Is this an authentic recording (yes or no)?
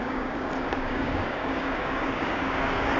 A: no